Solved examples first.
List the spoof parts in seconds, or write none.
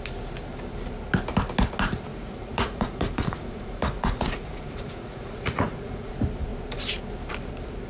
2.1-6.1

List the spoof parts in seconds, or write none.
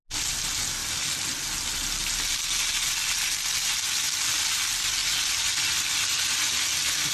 none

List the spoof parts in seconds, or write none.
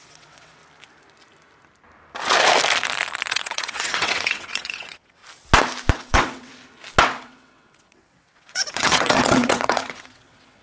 0.0-0.6; 3.3-5.2; 5.9-6.5; 7.0-10.6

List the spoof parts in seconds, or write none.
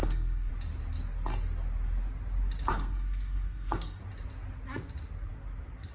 0.0-0.5; 2.7-4.0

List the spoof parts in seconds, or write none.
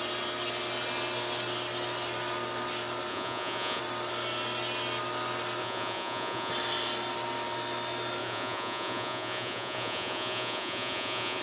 3.1-3.8; 5.6-6.5; 8.2-11.4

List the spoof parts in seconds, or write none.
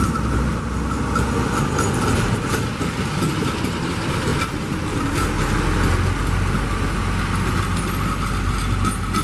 none